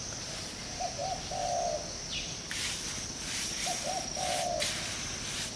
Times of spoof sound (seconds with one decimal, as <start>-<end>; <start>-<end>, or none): none